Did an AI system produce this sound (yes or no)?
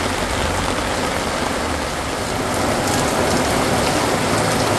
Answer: no